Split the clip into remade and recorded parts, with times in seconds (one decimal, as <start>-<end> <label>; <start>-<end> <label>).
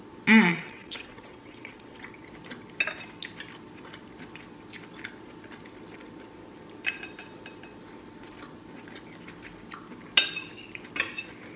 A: 0.0-0.5 recorded; 0.5-2.1 remade; 2.1-11.6 recorded